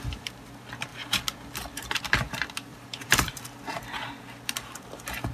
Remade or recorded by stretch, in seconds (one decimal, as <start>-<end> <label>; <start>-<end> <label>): 0.0-0.9 recorded; 0.9-2.0 remade; 2.0-2.7 recorded; 2.7-3.8 remade; 3.8-5.3 recorded